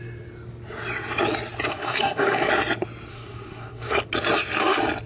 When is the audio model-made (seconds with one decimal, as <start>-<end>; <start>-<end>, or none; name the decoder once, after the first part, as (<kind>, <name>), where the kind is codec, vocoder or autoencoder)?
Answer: 1.7-2.5 (codec, SNAC); 3.1-4.0